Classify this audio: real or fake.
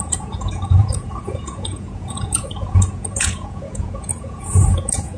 fake